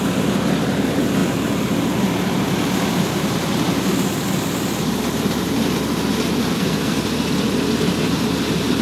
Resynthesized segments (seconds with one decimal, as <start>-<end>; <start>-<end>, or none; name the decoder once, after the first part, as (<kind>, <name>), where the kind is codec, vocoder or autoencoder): 6.4-7.0 (codec, SNAC)